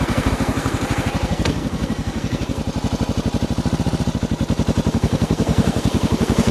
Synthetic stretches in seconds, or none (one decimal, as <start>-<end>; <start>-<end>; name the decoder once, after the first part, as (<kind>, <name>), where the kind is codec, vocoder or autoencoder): 0.0-2.6 (codec, SNAC); 4.9-6.5